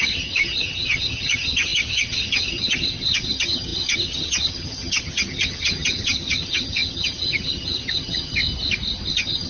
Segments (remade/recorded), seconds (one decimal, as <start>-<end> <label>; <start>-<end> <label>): 0.0-8.4 remade; 8.4-9.1 recorded; 9.1-9.5 remade